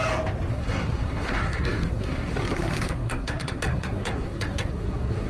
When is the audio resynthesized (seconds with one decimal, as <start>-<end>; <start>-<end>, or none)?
0.5-5.3